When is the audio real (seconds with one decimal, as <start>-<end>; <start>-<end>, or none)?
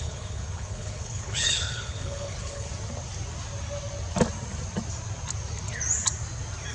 2.7-6.7